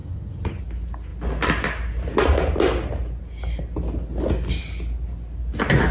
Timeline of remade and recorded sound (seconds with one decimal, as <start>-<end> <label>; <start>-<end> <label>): 0.0-0.6 remade; 0.6-5.9 recorded